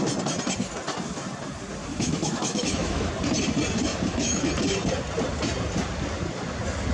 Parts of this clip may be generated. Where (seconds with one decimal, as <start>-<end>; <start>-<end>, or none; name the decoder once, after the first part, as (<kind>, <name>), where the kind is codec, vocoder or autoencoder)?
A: 1.9-3.1 (autoencoder, DAC-VAE); 3.9-4.5